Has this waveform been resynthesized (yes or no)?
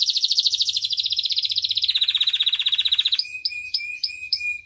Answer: yes